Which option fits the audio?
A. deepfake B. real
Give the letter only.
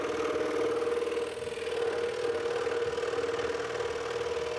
B